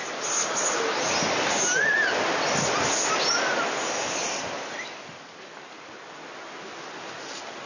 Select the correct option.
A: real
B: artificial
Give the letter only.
A